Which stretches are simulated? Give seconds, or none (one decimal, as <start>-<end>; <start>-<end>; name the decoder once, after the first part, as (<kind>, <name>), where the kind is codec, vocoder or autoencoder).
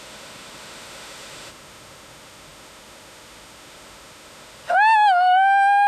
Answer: 0.0-5.9 (autoencoder, DAC-VAE)